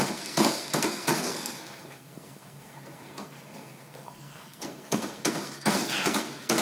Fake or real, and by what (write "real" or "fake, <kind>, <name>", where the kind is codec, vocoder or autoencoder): fake, codec, SNAC